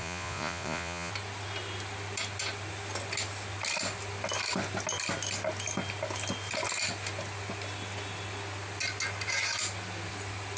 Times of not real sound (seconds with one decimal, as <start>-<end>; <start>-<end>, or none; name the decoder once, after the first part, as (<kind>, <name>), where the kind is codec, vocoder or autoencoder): 0.0-1.1 (vocoder, Vocos)